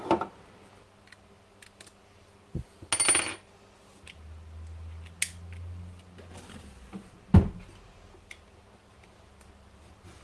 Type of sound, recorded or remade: recorded